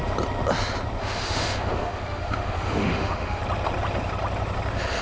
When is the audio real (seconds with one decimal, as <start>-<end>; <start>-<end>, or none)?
0.0-1.0; 3.4-5.0